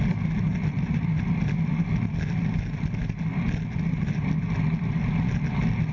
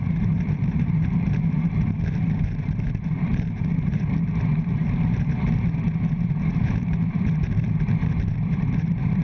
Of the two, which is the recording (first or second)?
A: first